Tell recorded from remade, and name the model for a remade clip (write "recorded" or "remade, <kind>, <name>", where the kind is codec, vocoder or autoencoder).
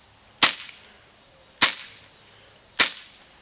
recorded